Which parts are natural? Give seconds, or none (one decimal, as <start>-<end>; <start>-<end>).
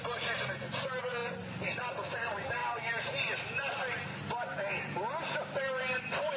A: 0.0-6.4